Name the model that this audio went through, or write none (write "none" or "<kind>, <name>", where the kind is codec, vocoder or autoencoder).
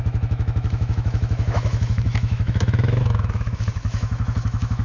autoencoder, DAC-VAE